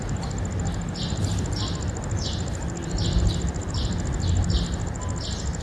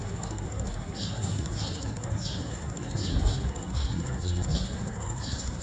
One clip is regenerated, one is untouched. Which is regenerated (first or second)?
second